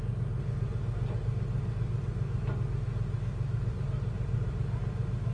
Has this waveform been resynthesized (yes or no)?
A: no